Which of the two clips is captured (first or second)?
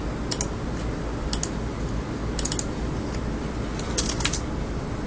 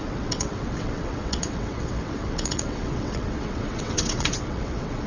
first